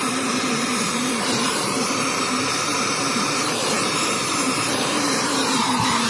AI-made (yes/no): yes